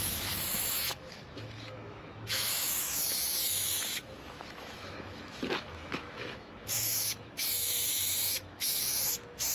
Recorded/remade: remade